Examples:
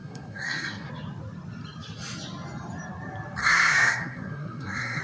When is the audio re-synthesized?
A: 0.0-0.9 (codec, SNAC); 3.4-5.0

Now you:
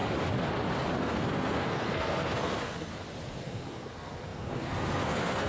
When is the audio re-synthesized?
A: 1.0-2.9 (codec, SNAC); 3.4-5.5